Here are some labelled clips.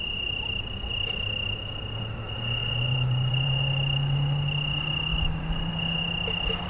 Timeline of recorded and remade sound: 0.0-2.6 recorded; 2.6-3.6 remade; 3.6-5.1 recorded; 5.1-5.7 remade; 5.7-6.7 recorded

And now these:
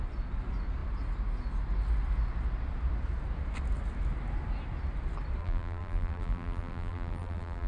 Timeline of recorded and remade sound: 0.0-5.4 recorded; 5.4-7.7 remade

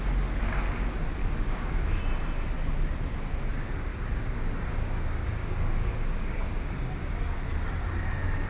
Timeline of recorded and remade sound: 0.0-1.2 recorded; 1.2-2.0 remade; 2.0-3.9 recorded; 3.9-7.2 remade; 7.2-8.5 recorded

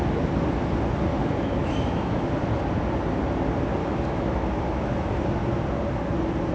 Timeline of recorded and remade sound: 0.0-1.1 recorded; 1.1-2.2 remade; 2.2-3.8 recorded; 3.8-5.1 remade; 5.1-6.5 recorded

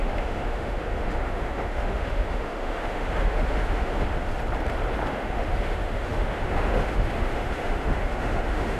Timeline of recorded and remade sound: 0.0-4.3 remade; 4.3-5.1 recorded; 5.1-8.8 remade

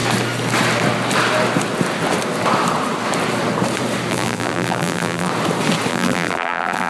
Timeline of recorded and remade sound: 0.0-4.1 recorded; 4.1-5.3 remade; 5.3-5.9 recorded; 5.9-6.9 remade